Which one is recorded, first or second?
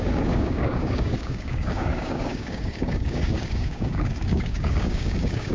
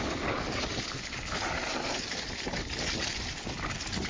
second